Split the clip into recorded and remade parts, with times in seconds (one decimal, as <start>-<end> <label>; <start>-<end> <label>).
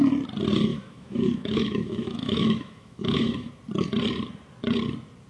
0.0-0.7 recorded; 0.7-3.5 remade; 3.5-5.3 recorded